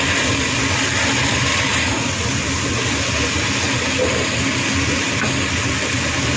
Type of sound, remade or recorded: recorded